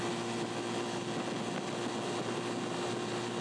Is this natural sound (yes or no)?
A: yes